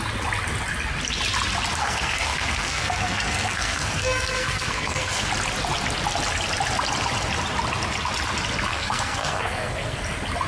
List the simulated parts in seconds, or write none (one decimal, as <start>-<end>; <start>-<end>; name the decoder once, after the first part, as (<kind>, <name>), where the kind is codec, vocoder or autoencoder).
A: 1.8-5.3 (codec, SNAC); 8.7-10.0